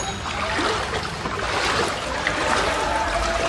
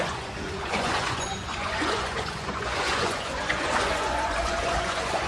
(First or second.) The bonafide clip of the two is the first